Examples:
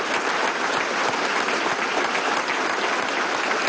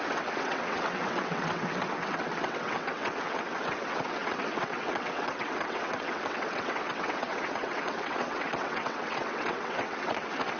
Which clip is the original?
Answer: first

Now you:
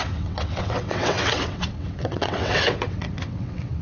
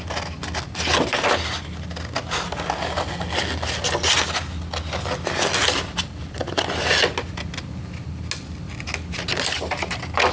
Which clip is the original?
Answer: second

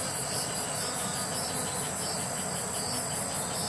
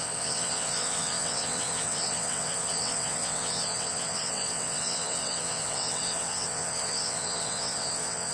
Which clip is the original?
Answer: first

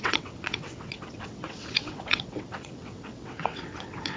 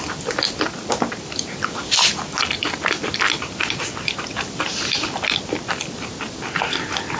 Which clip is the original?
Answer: second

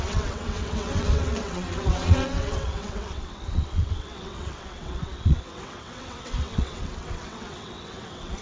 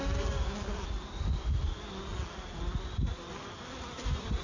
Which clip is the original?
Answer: second